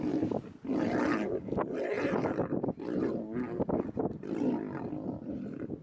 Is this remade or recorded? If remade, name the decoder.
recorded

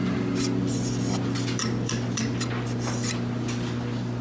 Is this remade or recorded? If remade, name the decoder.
recorded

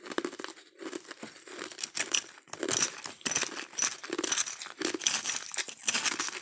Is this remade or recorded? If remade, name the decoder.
recorded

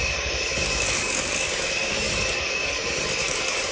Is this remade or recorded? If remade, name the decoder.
remade, codec, DAC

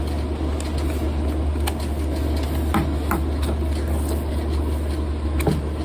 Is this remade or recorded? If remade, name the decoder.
recorded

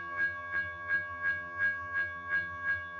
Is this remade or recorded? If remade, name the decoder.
remade, vocoder, HiFi-GAN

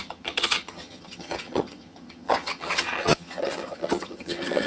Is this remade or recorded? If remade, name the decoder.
remade, vocoder, HiFi-GAN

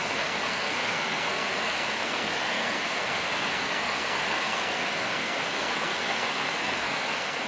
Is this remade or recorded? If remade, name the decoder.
remade, codec, SNAC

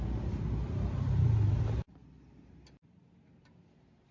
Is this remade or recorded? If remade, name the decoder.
recorded